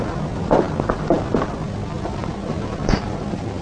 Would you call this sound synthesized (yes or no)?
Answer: no